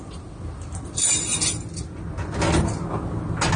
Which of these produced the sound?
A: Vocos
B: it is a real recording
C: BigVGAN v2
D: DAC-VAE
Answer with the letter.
B